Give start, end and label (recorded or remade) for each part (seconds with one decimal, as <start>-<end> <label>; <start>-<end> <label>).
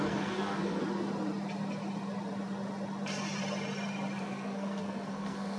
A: 0.0-0.8 remade; 0.8-4.2 recorded; 4.2-5.6 remade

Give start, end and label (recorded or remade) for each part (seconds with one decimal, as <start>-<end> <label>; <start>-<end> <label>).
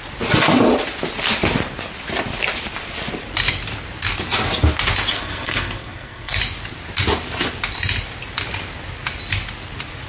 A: 0.0-5.1 recorded; 5.1-6.4 remade; 6.4-10.1 recorded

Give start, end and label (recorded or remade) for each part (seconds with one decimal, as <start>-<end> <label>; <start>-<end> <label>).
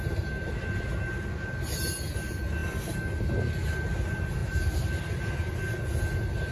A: 0.0-4.4 recorded; 4.4-5.0 remade; 5.0-6.5 recorded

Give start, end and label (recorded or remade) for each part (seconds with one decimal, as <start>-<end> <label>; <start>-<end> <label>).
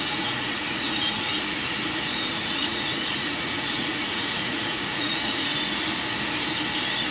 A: 0.0-1.3 remade; 1.3-2.3 recorded; 2.3-5.5 remade; 5.5-7.1 recorded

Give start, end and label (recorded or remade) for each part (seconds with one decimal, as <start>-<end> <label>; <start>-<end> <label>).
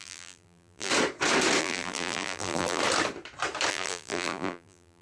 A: 0.0-0.9 remade; 0.9-1.6 recorded; 1.6-2.8 remade; 2.8-3.7 recorded; 3.7-5.0 remade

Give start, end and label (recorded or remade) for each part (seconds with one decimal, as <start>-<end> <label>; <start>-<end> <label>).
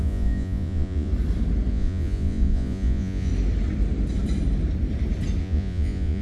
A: 0.0-1.1 remade; 1.1-1.7 recorded; 1.7-3.3 remade; 3.3-5.4 recorded; 5.4-6.2 remade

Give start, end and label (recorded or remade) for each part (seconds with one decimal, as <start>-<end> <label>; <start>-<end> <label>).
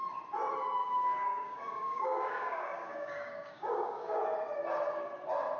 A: 0.0-0.8 recorded; 0.8-4.2 remade; 4.2-5.6 recorded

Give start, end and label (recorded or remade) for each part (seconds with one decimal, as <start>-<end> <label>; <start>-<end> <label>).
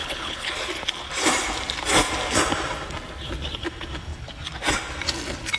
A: 0.0-0.5 remade; 0.5-5.6 recorded